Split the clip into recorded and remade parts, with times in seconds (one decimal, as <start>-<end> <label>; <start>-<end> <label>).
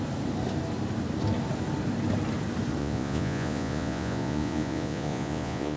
0.0-2.8 recorded; 2.8-5.8 remade